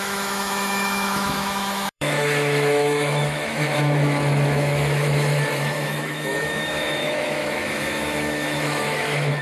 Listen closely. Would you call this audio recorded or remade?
remade